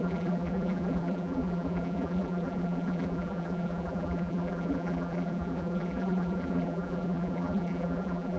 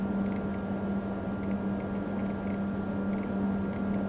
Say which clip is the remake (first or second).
first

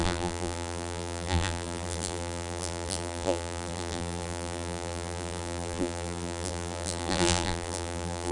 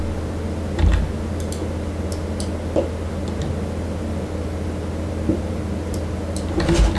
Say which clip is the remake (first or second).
first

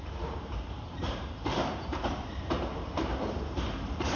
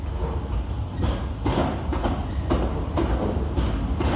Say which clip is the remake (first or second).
first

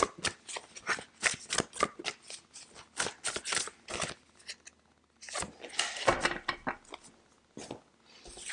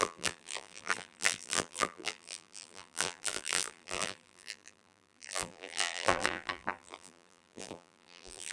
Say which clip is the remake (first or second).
second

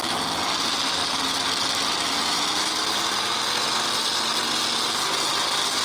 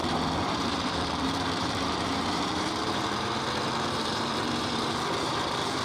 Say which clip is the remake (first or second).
second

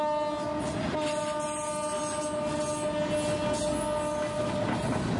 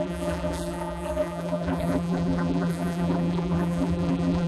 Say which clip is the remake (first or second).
second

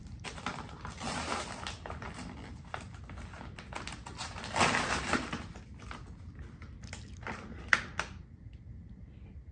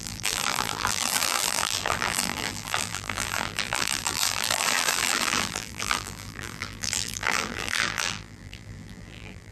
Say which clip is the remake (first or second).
second